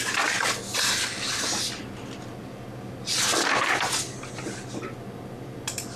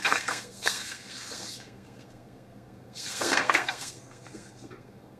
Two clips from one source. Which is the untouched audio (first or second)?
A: first